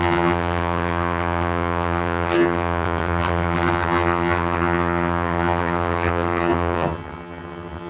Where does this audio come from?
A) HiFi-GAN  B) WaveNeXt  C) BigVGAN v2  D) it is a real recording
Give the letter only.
A